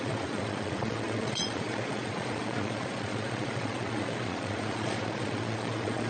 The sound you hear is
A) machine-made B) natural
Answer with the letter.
A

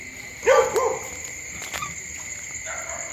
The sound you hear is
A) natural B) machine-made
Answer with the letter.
A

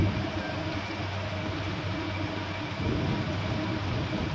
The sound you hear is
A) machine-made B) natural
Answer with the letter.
B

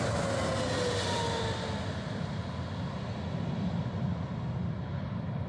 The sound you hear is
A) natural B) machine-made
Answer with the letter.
A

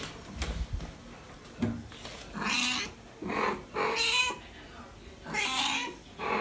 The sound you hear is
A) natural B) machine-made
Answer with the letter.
A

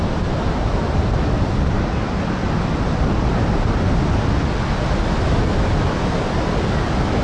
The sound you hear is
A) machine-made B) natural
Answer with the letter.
B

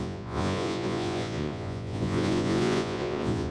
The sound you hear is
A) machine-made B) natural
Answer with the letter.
A